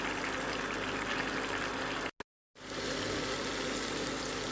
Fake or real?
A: real